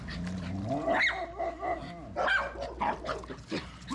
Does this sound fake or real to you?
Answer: real